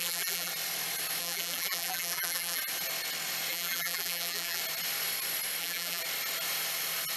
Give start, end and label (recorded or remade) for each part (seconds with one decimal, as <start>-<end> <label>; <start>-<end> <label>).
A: 0.0-0.5 remade; 0.5-1.2 recorded; 1.2-2.6 remade; 2.6-3.5 recorded; 3.5-4.6 remade; 4.6-5.6 recorded; 5.6-6.0 remade; 6.0-7.2 recorded